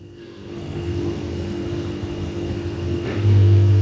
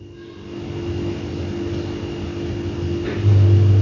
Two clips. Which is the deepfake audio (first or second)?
first